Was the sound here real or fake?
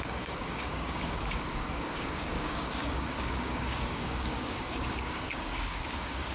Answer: fake